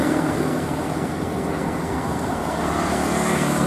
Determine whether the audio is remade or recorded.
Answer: remade